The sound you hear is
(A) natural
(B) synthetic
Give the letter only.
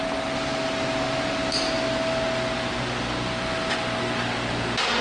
A